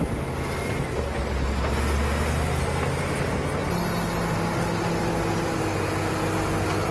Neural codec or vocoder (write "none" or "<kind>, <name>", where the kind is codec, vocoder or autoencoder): none